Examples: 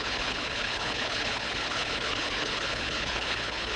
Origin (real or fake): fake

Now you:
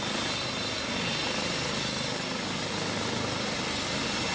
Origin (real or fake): real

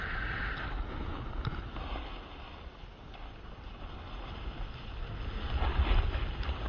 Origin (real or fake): real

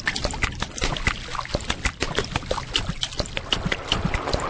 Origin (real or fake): real